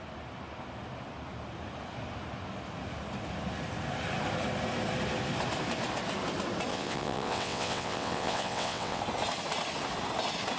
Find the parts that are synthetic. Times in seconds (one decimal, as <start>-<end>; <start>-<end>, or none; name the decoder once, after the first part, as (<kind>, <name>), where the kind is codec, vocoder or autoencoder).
6.7-9.0 (vocoder, WaveNeXt)